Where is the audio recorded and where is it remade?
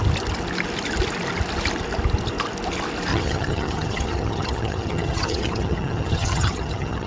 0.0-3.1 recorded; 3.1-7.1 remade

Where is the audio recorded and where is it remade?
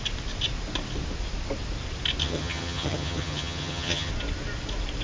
0.0-2.2 recorded; 2.2-4.1 remade; 4.1-5.0 recorded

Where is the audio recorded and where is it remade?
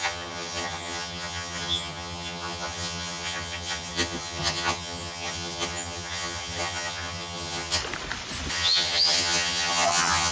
0.0-7.8 remade; 7.8-8.5 recorded; 8.5-10.3 remade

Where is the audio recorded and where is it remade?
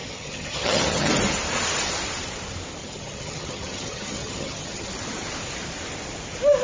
0.0-1.1 remade; 1.1-2.8 recorded; 2.8-4.9 remade; 4.9-6.6 recorded